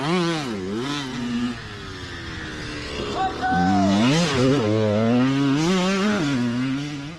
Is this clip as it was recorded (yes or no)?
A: yes